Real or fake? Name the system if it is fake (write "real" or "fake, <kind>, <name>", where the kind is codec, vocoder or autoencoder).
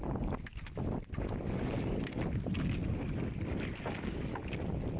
real